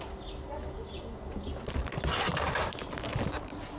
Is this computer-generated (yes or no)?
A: no